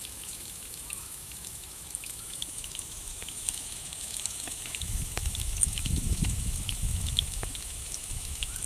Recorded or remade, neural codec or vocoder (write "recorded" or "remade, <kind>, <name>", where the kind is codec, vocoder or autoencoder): remade, autoencoder, DAC-VAE